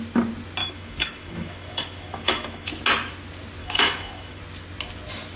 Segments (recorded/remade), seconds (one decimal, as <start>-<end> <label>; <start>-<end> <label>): 0.0-0.6 recorded; 0.6-2.7 remade; 2.7-3.6 recorded; 3.6-4.4 remade; 4.4-5.4 recorded